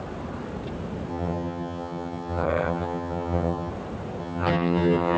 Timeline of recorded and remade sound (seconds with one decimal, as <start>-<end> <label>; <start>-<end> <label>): 0.0-1.1 recorded; 1.1-3.7 remade; 3.7-4.2 recorded; 4.2-5.2 remade